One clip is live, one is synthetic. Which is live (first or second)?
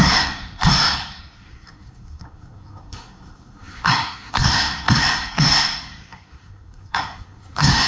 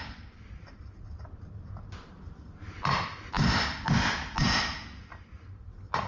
second